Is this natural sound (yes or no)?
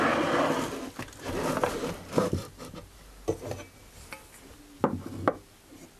yes